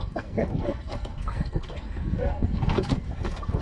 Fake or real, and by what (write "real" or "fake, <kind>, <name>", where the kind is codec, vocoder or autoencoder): fake, codec, SNAC